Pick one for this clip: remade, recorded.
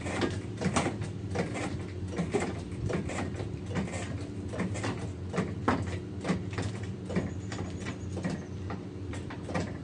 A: remade